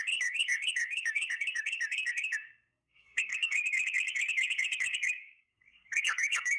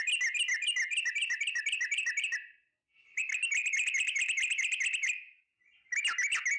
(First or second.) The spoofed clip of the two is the first